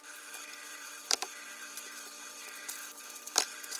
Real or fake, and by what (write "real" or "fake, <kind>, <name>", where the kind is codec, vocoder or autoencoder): fake, vocoder, BigVGAN v2